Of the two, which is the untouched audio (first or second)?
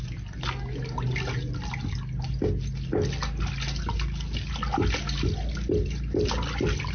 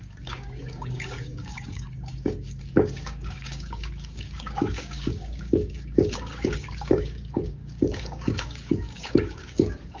first